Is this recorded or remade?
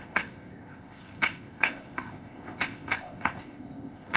remade